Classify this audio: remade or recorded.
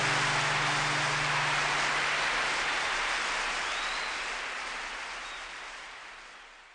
recorded